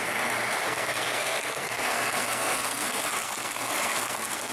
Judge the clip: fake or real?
fake